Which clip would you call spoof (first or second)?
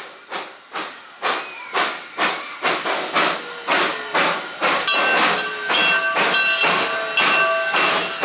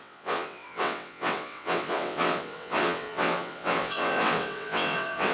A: second